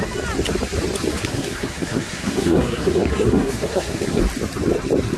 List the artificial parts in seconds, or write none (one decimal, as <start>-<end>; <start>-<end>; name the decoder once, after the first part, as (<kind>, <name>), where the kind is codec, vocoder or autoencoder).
1.1-4.2 (codec, SNAC)